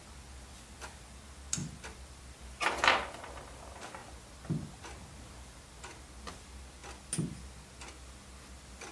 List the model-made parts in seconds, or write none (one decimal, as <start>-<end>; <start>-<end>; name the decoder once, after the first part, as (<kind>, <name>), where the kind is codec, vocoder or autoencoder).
none